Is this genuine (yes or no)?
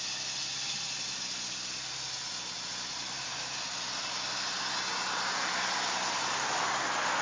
yes